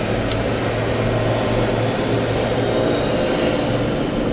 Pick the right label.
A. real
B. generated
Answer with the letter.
A